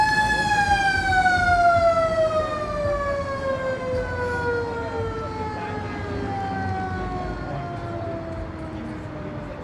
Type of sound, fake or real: real